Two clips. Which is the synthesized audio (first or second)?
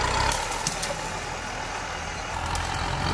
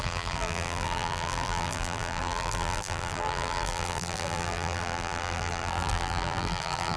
second